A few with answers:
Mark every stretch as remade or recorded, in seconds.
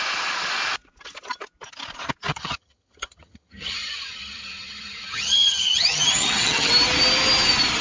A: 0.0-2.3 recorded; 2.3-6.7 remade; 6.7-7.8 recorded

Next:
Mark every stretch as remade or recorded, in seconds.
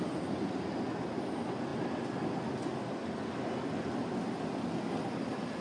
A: 0.0-5.6 recorded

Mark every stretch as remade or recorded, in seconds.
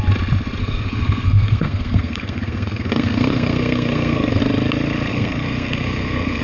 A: 0.0-0.6 recorded; 0.6-4.4 remade; 4.4-5.1 recorded; 5.1-6.4 remade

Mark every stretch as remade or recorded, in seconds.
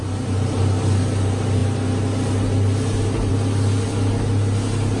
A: 0.0-5.0 recorded